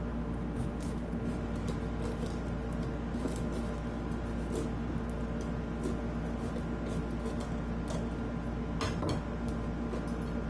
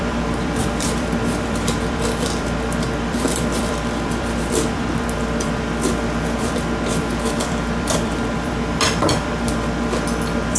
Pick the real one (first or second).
first